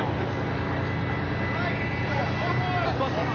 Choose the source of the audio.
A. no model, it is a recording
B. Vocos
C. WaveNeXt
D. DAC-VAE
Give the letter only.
A